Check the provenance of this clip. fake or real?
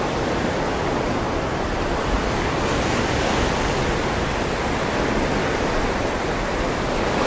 real